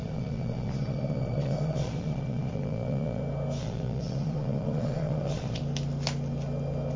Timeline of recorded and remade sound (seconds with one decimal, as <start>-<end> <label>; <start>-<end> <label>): 0.0-3.2 remade; 3.2-3.6 recorded; 3.6-5.6 remade; 5.6-7.0 recorded